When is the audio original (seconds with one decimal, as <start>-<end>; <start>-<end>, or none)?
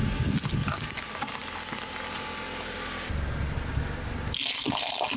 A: 0.0-5.2